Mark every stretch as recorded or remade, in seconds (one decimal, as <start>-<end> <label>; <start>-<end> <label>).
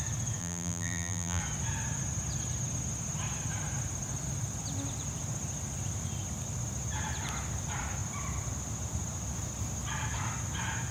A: 0.0-0.4 recorded; 0.4-1.4 remade; 1.4-10.9 recorded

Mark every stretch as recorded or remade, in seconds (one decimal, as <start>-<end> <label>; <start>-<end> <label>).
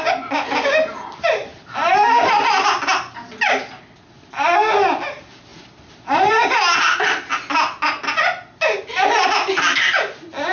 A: 0.0-10.5 recorded